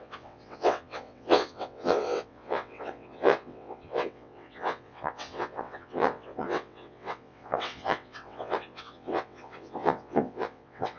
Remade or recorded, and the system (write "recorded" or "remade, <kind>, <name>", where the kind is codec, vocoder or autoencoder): remade, vocoder, WaveNeXt